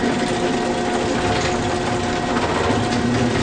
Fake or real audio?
real